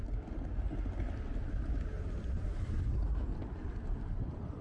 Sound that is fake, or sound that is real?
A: real